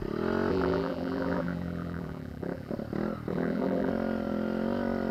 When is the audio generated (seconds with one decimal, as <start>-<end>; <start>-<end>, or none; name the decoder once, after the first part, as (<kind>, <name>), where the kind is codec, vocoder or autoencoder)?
0.5-2.7 (vocoder, BigVGAN v2); 3.3-3.9